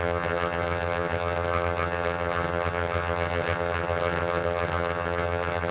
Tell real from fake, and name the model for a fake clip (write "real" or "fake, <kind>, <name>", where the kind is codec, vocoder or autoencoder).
fake, vocoder, HiFi-GAN